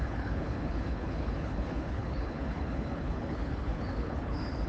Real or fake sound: fake